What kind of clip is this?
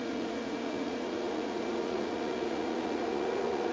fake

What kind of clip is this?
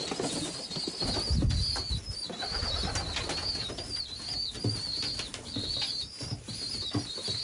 real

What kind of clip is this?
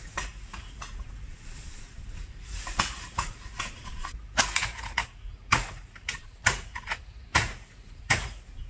fake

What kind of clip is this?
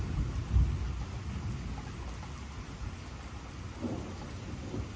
real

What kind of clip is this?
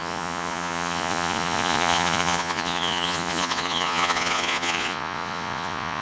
fake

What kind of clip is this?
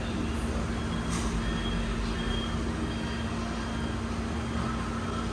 real